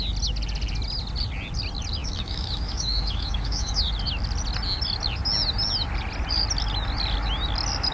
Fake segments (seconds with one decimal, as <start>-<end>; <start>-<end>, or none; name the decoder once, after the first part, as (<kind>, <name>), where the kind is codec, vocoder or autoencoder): 2.0-3.8 (autoencoder, DAC-VAE)